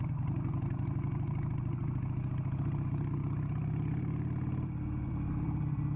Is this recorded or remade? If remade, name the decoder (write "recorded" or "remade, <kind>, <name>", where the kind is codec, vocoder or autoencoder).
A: recorded